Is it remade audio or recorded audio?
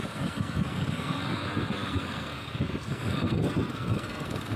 remade